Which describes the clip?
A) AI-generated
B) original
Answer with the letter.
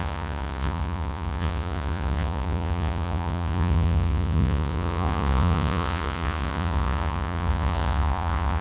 A